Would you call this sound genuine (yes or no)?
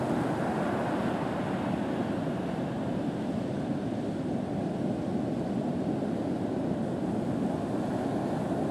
yes